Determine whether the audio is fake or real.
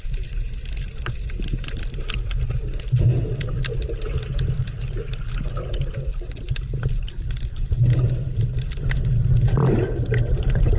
real